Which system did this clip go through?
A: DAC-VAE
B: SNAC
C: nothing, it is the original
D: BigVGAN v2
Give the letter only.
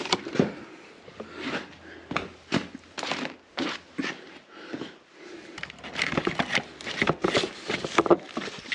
C